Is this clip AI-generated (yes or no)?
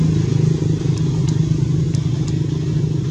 no